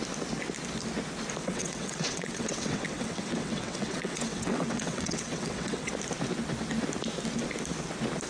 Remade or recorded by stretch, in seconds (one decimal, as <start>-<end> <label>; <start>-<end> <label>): 0.0-1.4 recorded; 1.4-5.9 remade; 5.9-8.3 recorded